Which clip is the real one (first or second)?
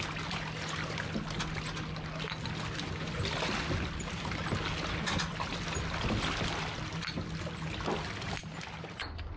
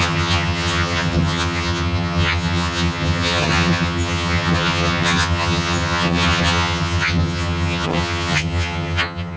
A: first